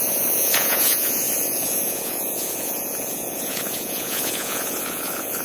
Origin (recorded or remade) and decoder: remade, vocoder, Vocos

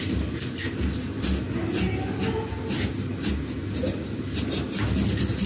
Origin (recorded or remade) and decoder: recorded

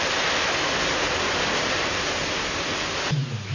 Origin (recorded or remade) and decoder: recorded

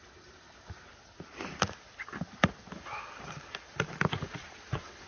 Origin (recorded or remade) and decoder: recorded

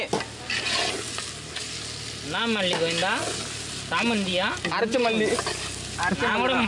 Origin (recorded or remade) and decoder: recorded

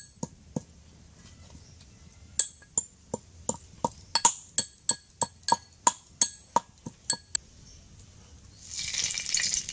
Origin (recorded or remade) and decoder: recorded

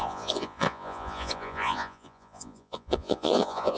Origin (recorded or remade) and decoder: remade, vocoder, Vocos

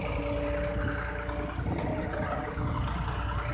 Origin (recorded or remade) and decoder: recorded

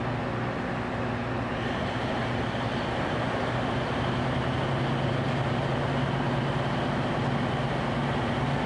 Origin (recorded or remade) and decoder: recorded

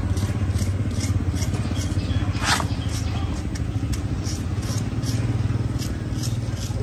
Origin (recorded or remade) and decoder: recorded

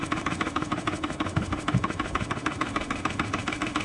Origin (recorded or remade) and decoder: remade, autoencoder, DAC-VAE